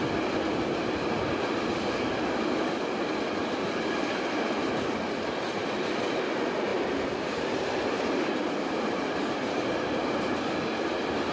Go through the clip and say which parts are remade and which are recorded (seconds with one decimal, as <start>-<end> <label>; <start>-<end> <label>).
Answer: 0.0-6.7 recorded; 6.7-10.1 remade; 10.1-11.3 recorded